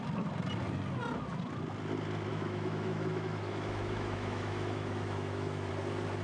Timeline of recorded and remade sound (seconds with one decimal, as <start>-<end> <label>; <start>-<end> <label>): 0.0-2.3 recorded; 2.3-5.7 remade; 5.7-6.2 recorded